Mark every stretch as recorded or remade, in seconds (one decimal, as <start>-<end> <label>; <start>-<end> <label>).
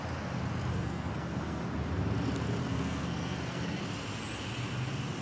0.0-0.7 recorded; 0.7-1.6 remade; 1.6-2.6 recorded; 2.6-3.8 remade; 3.8-5.2 recorded